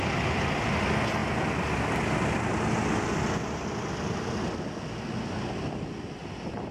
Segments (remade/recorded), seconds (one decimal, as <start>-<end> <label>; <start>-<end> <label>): 0.0-6.7 recorded